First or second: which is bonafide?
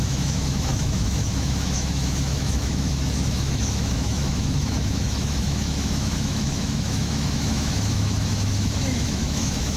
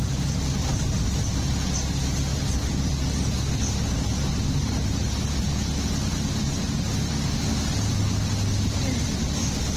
second